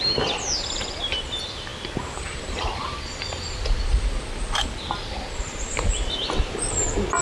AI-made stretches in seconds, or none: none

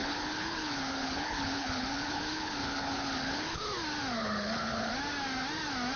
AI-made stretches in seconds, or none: 0.0-3.6 (codec, HILCodec); 4.2-4.9